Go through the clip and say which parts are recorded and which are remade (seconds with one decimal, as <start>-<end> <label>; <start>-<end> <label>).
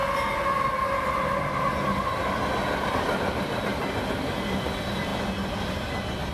0.0-2.9 recorded; 2.9-3.7 remade; 3.7-4.6 recorded; 4.6-5.1 remade; 5.1-6.3 recorded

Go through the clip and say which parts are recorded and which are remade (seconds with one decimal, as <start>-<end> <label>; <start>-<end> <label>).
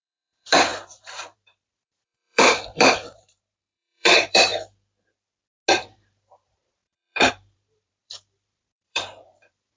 0.0-4.5 remade; 4.5-5.7 recorded; 5.7-9.8 remade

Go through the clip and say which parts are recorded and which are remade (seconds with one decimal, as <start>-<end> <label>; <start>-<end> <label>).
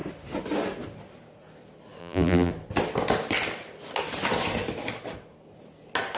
0.0-2.0 recorded; 2.0-2.5 remade; 2.5-6.2 recorded